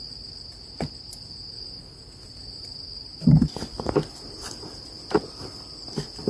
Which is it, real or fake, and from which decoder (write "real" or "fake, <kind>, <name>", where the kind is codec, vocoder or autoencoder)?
real